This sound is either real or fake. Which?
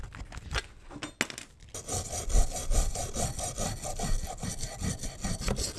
real